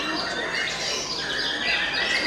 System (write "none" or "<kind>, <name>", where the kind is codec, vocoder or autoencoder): none